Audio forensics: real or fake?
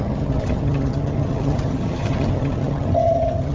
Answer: fake